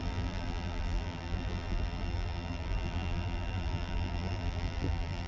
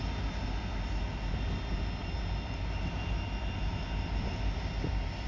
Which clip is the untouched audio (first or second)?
second